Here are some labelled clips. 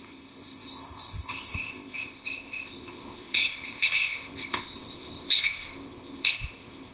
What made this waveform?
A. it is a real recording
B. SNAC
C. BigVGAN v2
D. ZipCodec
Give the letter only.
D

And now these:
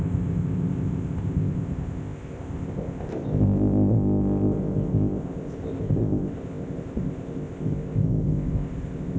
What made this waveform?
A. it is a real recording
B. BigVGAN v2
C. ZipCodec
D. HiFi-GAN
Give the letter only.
C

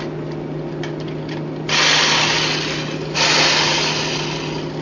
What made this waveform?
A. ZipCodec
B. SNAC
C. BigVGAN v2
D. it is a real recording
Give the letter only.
D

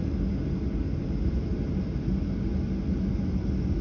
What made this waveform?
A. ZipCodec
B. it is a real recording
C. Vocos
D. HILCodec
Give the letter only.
B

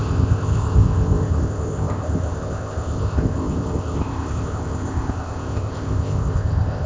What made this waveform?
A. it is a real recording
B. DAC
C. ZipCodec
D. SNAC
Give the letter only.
C